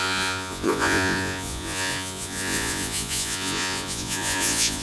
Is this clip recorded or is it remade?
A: remade